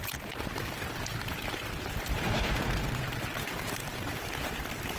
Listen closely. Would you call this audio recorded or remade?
remade